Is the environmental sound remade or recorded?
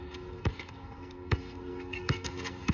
remade